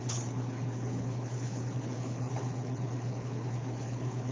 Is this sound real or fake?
fake